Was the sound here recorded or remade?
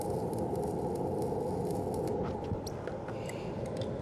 recorded